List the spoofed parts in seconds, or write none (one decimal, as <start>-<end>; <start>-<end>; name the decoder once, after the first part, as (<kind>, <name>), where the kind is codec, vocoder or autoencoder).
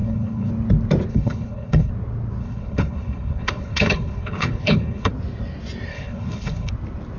0.0-0.5 (codec, HILCodec); 1.1-1.9; 2.4-5.1; 5.9-6.7